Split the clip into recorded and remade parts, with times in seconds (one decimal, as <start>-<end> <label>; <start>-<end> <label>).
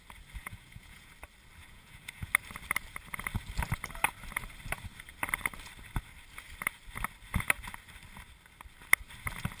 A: 0.0-0.4 recorded; 0.4-1.1 remade; 1.1-1.6 recorded; 1.6-2.3 remade; 2.3-9.6 recorded